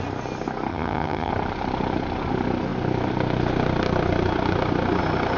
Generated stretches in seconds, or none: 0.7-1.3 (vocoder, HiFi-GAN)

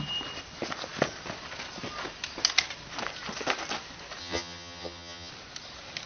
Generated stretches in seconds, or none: 4.2-5.3 (vocoder, HiFi-GAN)

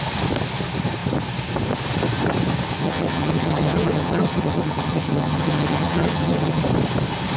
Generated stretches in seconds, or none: 2.8-6.6 (vocoder, HiFi-GAN)

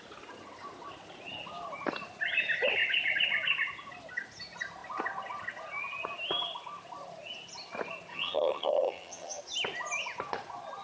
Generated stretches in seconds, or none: 8.1-9.4 (vocoder, HiFi-GAN)